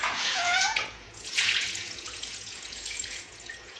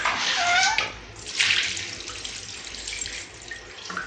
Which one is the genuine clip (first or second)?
second